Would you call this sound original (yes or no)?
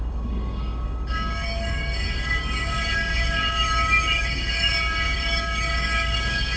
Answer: no